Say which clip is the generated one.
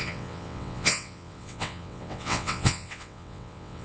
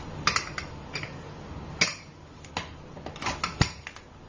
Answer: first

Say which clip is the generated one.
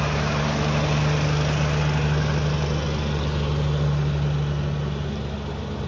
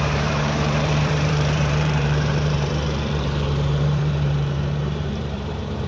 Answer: second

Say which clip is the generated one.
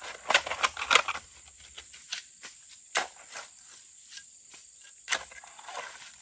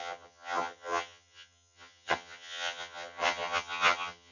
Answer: second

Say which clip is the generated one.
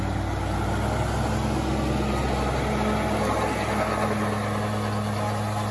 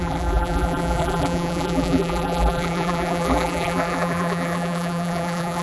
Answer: second